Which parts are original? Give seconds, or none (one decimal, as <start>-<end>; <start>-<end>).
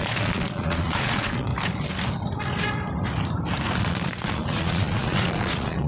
1.5-3.8